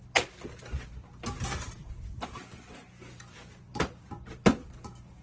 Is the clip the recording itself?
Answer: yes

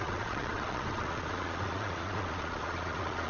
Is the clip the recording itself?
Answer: no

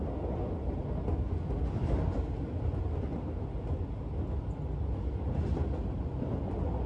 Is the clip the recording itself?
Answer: yes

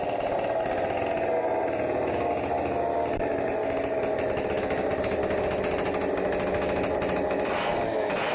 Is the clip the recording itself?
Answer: yes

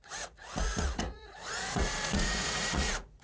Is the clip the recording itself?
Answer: no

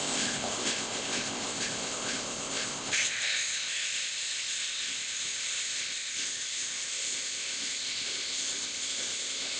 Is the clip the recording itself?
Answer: no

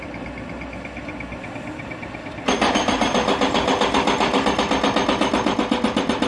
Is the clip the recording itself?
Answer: yes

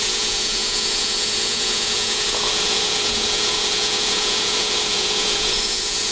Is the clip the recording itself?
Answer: no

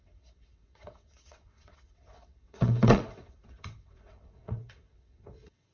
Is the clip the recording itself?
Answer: no